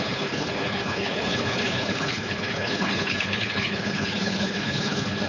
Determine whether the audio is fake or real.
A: fake